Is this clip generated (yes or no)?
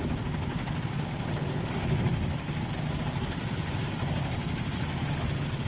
no